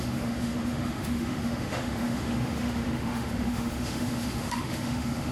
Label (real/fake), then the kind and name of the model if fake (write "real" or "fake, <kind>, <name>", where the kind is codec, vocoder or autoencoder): fake, autoencoder, DAC-VAE